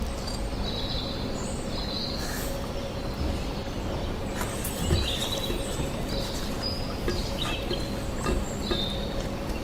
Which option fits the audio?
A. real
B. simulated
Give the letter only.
A